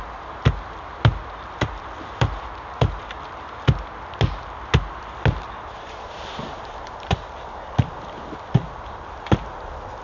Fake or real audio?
real